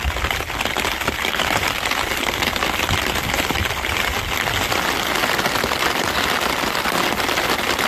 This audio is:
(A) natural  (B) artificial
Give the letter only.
A